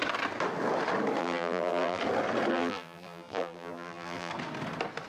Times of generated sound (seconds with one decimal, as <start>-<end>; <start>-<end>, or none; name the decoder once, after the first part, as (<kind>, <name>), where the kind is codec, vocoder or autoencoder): 1.2-2.0 (vocoder, BigVGAN v2); 2.5-4.3